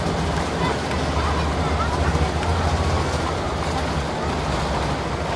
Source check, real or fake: real